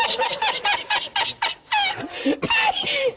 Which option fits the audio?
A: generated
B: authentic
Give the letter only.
B